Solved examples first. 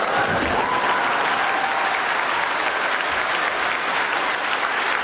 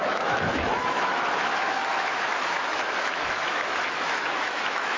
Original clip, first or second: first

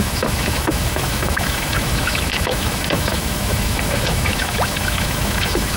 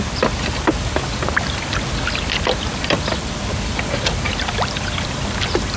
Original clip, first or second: second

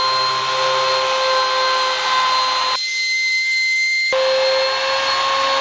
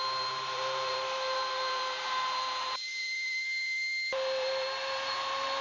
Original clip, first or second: first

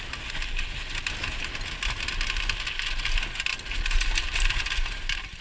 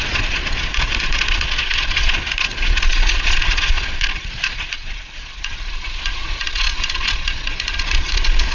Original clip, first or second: first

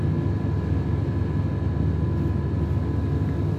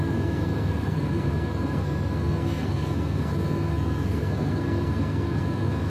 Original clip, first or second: first